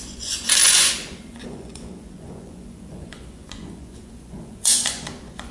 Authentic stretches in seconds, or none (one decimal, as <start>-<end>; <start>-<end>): none